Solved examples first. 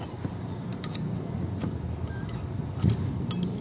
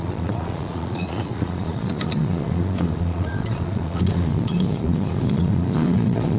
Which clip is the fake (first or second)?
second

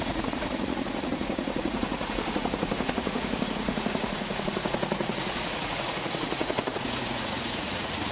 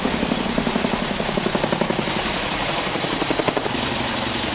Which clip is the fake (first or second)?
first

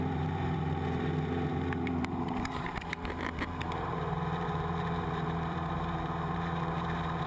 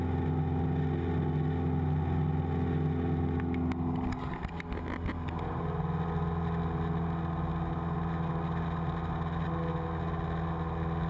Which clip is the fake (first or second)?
first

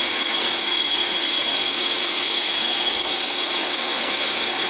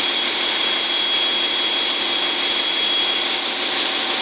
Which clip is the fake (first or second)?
first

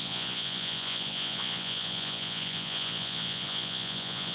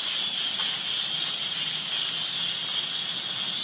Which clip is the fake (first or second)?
first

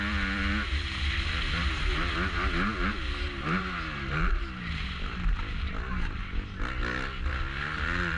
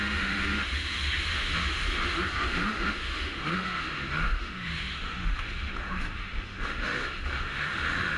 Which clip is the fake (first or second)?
second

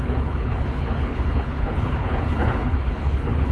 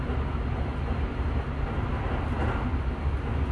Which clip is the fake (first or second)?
first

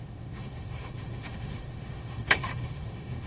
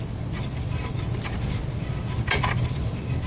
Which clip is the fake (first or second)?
first